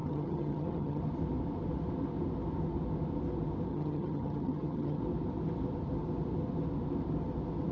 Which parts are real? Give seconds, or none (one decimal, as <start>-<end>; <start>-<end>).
1.0-3.7; 5.0-7.7